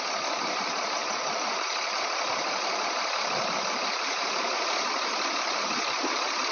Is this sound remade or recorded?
recorded